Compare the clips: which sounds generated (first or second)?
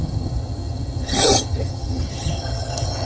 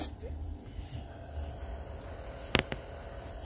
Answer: first